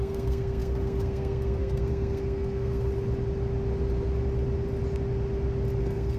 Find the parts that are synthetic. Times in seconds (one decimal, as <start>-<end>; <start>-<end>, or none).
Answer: 0.0-2.9; 5.8-6.2